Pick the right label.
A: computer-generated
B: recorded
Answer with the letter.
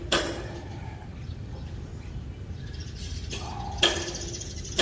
B